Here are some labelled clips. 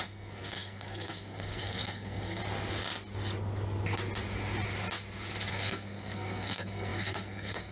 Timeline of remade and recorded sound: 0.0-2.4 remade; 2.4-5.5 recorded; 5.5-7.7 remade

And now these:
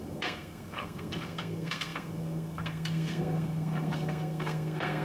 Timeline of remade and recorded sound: 0.0-5.0 remade

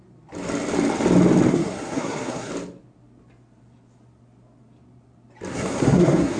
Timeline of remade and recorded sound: 0.0-1.5 recorded; 1.5-2.5 remade; 2.5-5.5 recorded; 5.5-6.4 remade

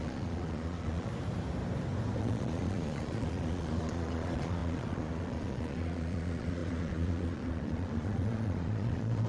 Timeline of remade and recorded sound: 0.0-1.1 remade; 1.1-2.2 recorded; 2.2-9.3 remade

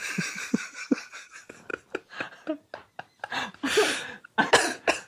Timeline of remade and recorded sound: 0.0-1.7 remade; 1.7-5.1 recorded

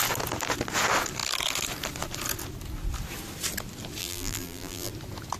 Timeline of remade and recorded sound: 0.0-4.0 recorded; 4.0-4.9 remade; 4.9-5.4 recorded

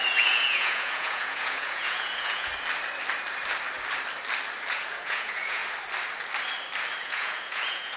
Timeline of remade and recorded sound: 0.0-2.5 remade; 2.5-4.7 recorded; 4.7-5.6 remade; 5.6-7.0 recorded; 7.0-8.0 remade